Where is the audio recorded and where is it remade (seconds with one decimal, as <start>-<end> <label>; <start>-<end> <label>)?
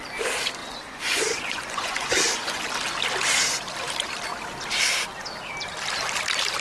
0.0-0.6 recorded; 0.6-2.6 remade; 2.6-6.6 recorded